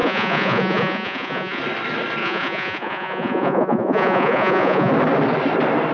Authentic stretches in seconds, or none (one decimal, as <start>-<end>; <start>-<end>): 1.6-2.2; 4.9-5.9